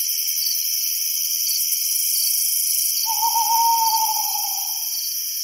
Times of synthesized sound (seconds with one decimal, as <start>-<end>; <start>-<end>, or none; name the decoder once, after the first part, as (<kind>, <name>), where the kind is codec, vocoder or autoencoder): none